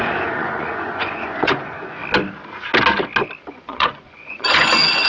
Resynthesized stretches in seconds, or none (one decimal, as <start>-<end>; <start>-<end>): 0.0-2.0; 3.5-5.1